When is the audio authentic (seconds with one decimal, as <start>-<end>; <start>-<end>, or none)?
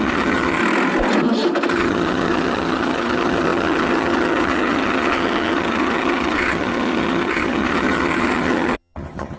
0.6-1.7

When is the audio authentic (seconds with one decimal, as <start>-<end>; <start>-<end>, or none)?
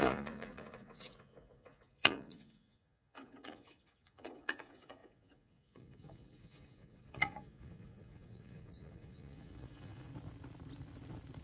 10.1-11.4